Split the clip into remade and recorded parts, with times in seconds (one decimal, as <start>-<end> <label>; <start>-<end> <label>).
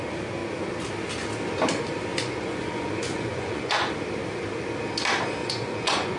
0.0-2.1 recorded; 2.1-3.9 remade; 3.9-5.4 recorded; 5.4-6.2 remade